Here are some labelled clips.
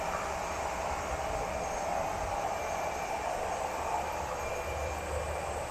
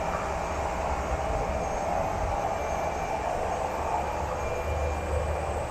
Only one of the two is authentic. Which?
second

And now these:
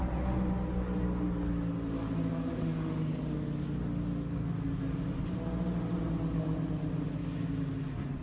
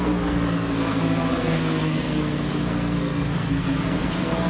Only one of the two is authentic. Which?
first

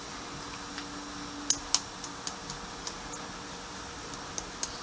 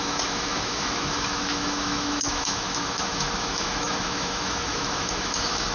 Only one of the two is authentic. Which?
first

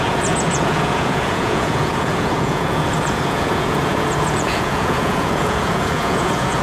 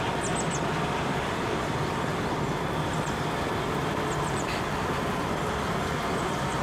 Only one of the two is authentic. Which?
second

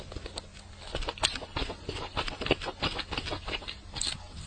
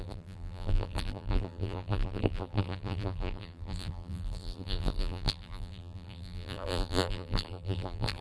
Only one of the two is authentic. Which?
first